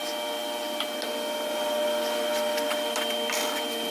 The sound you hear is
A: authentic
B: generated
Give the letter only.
A